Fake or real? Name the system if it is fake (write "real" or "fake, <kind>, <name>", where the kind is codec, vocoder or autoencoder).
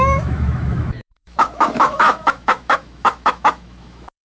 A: fake, autoencoder, DAC-VAE